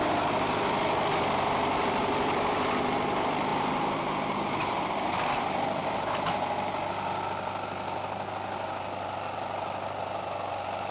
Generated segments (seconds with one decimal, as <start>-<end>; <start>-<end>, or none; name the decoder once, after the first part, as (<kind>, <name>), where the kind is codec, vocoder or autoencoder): none